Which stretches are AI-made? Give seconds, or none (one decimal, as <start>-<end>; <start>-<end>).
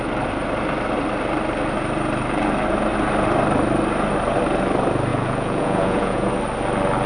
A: 5.1-6.3